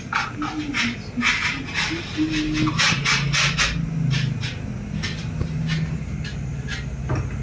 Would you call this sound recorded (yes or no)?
yes